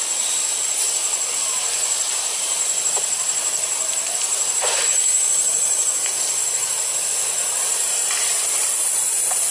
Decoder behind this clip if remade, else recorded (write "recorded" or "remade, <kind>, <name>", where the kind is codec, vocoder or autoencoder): recorded